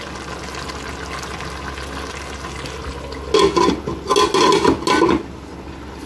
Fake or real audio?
real